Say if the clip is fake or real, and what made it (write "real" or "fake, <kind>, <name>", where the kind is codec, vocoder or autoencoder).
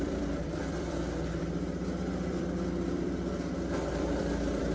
fake, vocoder, BigVGAN v2